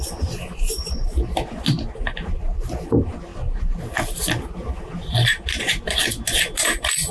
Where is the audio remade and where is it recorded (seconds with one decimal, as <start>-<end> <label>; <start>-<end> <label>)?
0.0-7.1 recorded